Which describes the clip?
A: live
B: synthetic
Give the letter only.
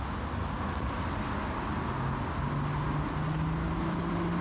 A